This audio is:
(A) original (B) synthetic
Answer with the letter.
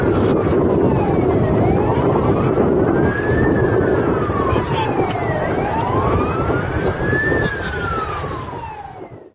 A